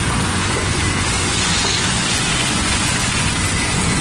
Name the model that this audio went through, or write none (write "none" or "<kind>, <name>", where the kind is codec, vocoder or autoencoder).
vocoder, Vocos